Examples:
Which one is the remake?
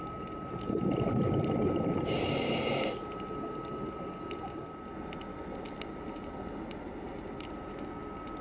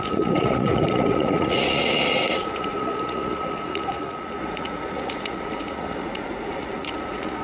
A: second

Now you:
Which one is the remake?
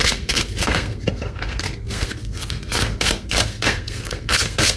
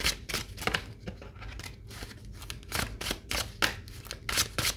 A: first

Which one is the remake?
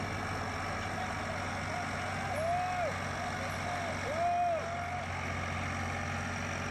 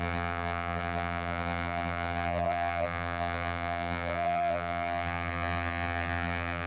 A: second